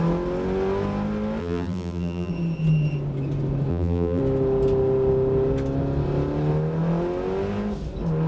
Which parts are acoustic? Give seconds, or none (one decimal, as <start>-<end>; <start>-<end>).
0.0-1.4; 2.3-3.7; 4.2-8.3